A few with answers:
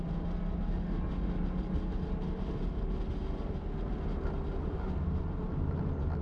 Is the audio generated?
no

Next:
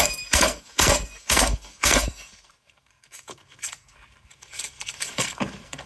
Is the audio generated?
yes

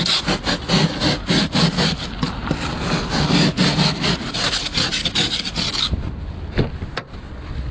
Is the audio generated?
no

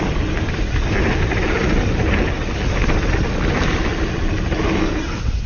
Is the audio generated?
no